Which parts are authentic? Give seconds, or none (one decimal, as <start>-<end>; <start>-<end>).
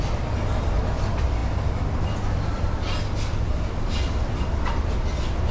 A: 0.0-5.5